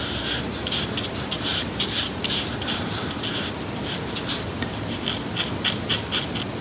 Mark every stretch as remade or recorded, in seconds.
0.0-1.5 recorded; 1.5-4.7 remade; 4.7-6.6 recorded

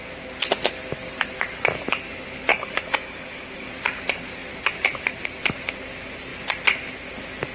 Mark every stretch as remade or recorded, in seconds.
0.0-2.5 recorded; 2.5-3.7 remade; 3.7-7.5 recorded

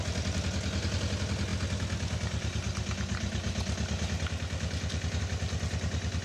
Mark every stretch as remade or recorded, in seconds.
0.0-6.2 recorded

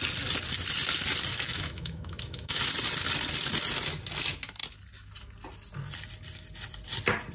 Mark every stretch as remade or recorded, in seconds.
0.0-1.3 recorded; 1.3-2.6 remade; 2.6-7.3 recorded